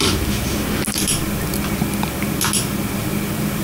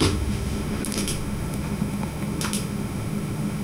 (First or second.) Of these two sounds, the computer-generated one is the second